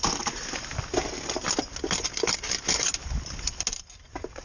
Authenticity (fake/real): real